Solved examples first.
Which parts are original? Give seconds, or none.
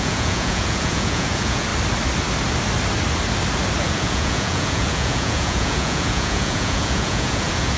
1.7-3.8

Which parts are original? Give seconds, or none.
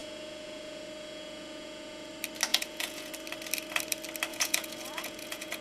2.1-2.5; 3.1-4.3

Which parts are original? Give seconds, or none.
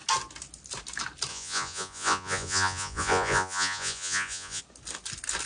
0.0-1.3; 4.6-5.5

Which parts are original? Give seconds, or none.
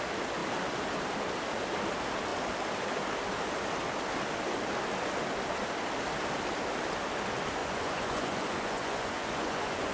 0.0-7.6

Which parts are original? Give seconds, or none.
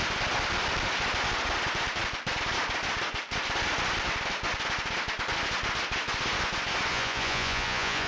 0.0-6.9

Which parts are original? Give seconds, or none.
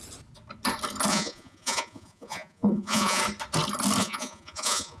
0.0-1.1; 3.2-4.0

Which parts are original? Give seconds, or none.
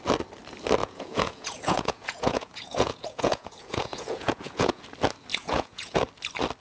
0.0-0.8; 4.8-5.3; 6.0-6.6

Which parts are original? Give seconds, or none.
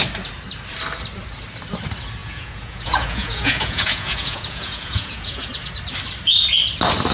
0.0-2.2; 5.5-7.1